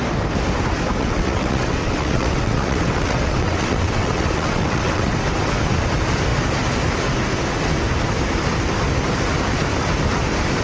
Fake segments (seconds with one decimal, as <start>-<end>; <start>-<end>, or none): 1.0-5.1